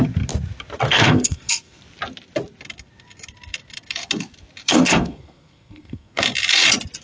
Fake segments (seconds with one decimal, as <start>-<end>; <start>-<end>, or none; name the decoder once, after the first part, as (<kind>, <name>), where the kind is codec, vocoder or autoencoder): 0.9-1.8 (codec, SNAC); 4.6-6.2